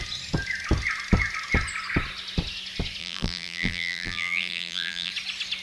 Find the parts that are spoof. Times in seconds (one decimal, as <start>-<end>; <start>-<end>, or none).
3.0-5.1